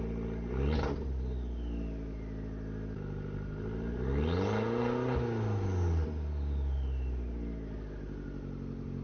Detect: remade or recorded recorded